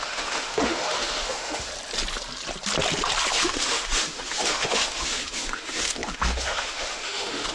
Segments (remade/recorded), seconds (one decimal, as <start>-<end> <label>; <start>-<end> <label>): 0.0-1.7 remade; 1.7-3.3 recorded; 3.3-7.5 remade